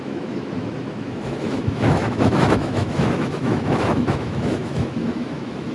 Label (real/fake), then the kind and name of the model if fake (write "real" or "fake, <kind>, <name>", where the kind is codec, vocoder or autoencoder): fake, autoencoder, DAC-VAE